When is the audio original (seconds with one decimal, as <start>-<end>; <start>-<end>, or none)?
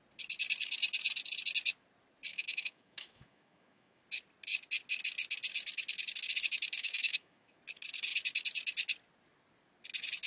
0.0-2.3; 4.0-6.8; 7.6-10.3